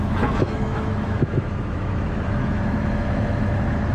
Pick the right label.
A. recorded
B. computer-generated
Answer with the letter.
B